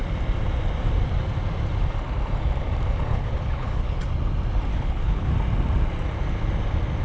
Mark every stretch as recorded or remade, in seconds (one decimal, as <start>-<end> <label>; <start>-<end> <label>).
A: 0.0-3.1 recorded; 3.1-4.0 remade; 4.0-4.7 recorded; 4.7-5.3 remade; 5.3-7.0 recorded